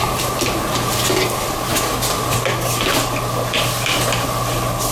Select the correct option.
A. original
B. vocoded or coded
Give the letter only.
A